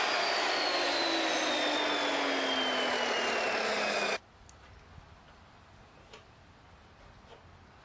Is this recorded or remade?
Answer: recorded